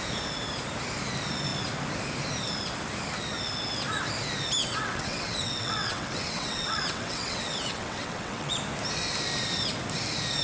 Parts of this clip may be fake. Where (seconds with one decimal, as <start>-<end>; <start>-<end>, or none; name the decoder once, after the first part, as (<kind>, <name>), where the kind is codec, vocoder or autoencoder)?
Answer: 4.6-8.5 (vocoder, WaveNeXt)